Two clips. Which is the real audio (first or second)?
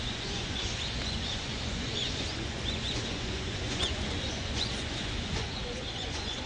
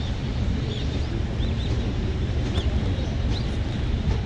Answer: second